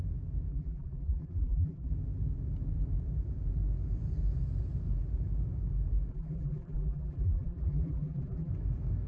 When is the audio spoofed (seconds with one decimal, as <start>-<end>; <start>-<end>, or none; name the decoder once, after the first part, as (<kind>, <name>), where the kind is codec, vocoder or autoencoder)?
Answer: 0.5-1.9 (vocoder, BigVGAN v2); 6.1-8.5

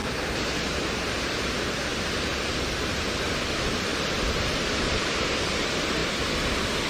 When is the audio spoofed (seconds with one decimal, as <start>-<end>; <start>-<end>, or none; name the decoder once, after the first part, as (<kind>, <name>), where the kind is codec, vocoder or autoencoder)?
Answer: 1.9-3.2 (vocoder, BigVGAN v2)

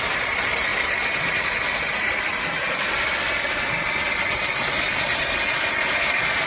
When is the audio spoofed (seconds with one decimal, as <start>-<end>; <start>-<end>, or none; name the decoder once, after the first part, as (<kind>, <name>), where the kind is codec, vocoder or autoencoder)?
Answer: none

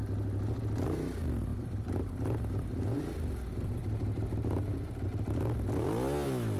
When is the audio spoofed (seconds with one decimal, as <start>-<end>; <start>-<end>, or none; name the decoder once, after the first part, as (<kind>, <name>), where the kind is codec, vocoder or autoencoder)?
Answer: 1.5-3.0 (vocoder, BigVGAN v2); 3.8-4.9